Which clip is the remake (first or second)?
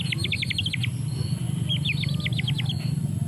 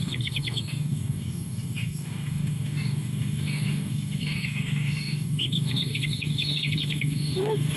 second